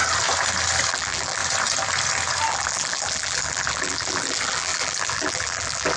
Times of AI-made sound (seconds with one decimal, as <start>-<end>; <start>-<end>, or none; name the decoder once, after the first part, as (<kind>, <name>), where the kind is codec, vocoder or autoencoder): 0.9-1.4 (vocoder, BigVGAN v2); 2.5-6.0